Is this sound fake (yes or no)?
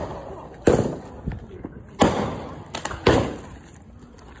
no